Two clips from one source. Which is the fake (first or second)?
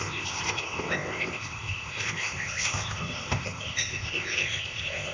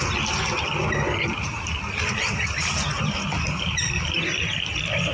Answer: first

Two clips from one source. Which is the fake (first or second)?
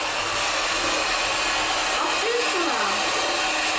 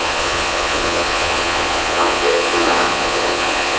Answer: second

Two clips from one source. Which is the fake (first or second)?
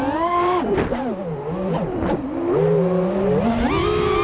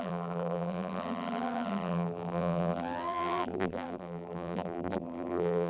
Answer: second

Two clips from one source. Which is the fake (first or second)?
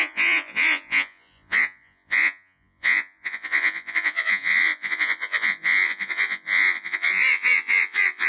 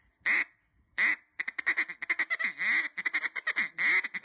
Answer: first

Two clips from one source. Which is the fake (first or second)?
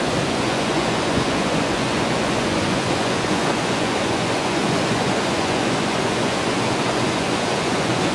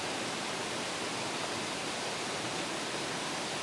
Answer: first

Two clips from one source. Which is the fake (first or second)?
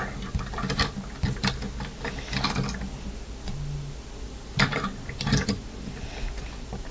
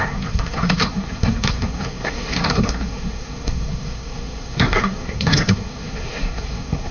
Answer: second